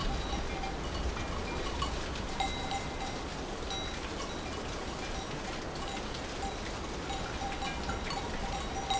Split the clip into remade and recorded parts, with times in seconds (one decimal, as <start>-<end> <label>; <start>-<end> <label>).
0.0-9.0 recorded